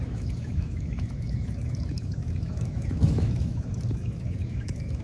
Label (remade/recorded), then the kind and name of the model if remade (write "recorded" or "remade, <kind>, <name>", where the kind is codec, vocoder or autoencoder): remade, autoencoder, DAC-VAE